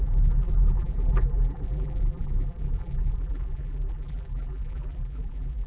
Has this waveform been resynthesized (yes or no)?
yes